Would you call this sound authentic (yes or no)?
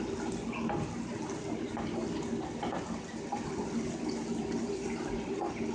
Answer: yes